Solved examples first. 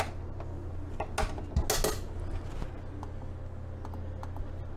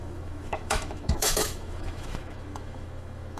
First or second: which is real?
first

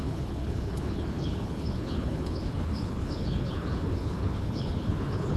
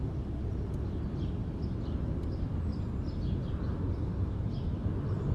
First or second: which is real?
second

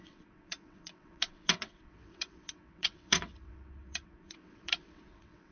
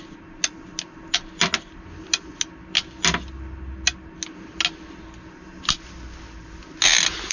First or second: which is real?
second